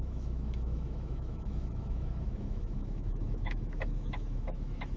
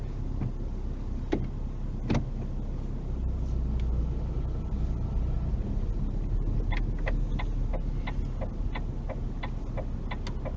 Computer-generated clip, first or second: first